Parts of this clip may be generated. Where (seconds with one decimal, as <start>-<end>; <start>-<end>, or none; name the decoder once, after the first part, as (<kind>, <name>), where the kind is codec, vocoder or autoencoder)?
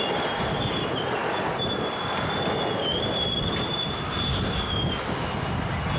none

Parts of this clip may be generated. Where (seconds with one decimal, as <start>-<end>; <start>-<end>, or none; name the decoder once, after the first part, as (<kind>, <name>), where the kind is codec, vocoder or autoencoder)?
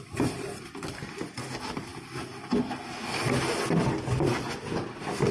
none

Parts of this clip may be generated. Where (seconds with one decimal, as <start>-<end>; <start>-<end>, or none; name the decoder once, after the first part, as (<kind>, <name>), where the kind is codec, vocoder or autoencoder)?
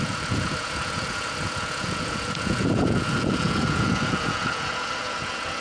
0.0-5.6 (vocoder, Vocos)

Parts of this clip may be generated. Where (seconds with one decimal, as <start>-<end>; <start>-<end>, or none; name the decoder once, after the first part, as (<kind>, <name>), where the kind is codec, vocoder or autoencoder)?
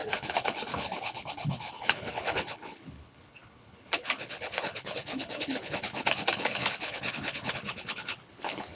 0.0-8.8 (codec, HILCodec)